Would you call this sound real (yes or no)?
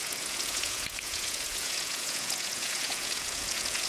no